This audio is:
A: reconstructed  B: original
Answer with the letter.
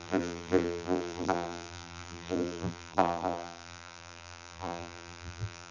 A